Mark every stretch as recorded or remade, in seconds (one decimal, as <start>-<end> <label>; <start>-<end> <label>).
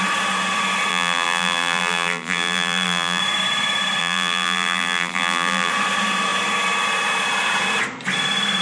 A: 0.0-0.9 recorded; 0.9-3.2 remade; 3.2-4.0 recorded; 4.0-5.7 remade; 5.7-8.6 recorded